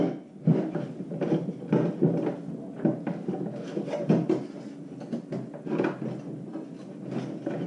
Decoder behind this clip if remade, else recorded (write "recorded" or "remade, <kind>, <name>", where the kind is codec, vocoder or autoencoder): recorded